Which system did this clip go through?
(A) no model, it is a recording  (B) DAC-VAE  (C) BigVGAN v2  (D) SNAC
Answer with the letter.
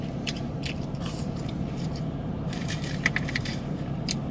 C